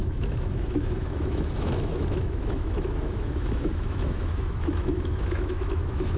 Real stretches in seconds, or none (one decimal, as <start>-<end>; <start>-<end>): none